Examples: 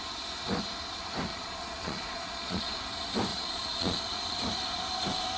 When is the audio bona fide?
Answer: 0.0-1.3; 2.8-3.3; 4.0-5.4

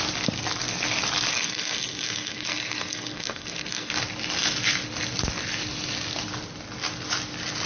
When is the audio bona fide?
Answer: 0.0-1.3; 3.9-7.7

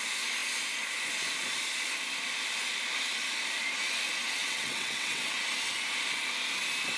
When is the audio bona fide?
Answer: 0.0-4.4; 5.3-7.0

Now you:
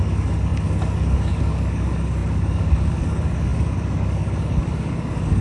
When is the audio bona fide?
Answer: none